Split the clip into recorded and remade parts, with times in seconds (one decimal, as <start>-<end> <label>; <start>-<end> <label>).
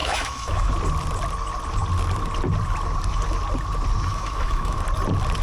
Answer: 0.0-0.7 remade; 0.7-4.1 recorded; 4.1-4.8 remade; 4.8-5.4 recorded